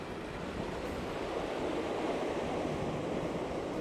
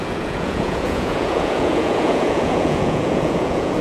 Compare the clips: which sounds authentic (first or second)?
first